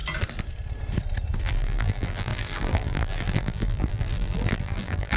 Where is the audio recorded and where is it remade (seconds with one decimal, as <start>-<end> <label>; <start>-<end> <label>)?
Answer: 0.0-1.4 recorded; 1.4-5.2 remade